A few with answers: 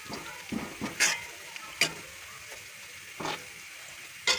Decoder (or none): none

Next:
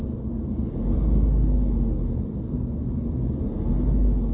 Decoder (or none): none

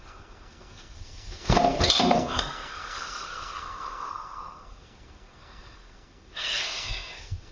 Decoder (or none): codec, SNAC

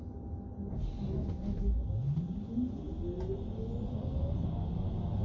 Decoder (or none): none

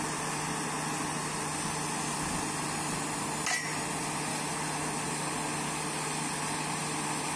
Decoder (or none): none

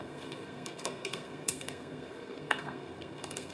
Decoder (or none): codec, SNAC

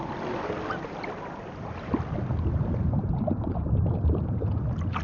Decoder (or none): none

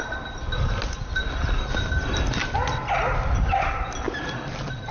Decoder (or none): none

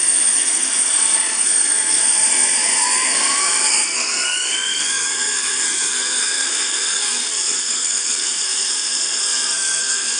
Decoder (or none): codec, SNAC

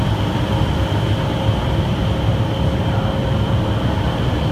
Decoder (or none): none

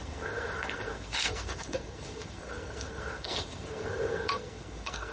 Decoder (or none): codec, SNAC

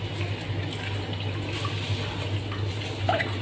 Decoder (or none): none